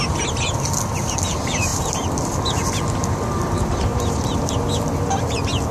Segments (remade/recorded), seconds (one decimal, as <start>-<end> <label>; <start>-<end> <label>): 0.0-3.9 recorded; 3.9-4.8 remade; 4.8-5.7 recorded